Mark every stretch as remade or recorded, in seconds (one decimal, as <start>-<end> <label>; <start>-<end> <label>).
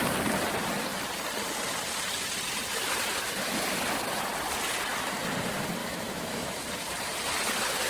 0.0-5.8 recorded; 5.8-6.6 remade; 6.6-7.9 recorded